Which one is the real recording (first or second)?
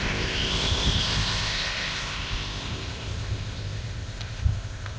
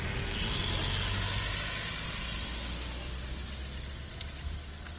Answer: second